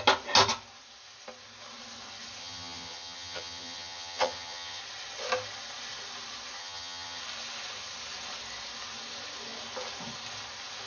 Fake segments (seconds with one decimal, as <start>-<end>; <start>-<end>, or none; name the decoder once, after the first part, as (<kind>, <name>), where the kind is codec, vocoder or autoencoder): 2.4-4.8 (vocoder, HiFi-GAN); 6.6-7.2